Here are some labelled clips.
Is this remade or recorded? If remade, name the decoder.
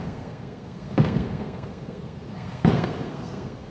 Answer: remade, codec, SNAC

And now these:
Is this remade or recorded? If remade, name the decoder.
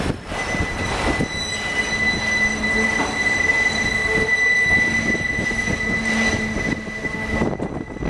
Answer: recorded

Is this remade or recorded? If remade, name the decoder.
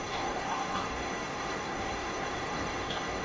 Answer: remade, codec, SNAC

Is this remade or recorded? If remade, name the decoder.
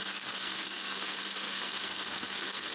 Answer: remade, codec, SNAC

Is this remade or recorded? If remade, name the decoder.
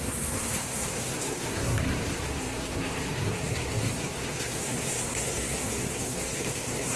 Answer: remade, codec, SNAC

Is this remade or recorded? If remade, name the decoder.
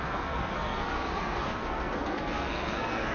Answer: remade, codec, SNAC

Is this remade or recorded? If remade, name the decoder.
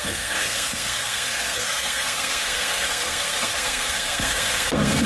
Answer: remade, codec, SNAC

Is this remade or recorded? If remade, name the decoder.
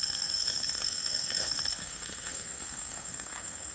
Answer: remade, codec, SNAC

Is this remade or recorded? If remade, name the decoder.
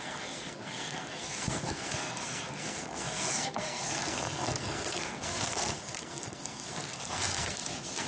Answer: remade, codec, SNAC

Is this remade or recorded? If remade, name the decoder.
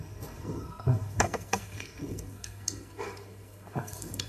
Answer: remade, codec, SNAC